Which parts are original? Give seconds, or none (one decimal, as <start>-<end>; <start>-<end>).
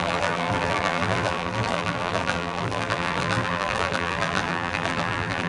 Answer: none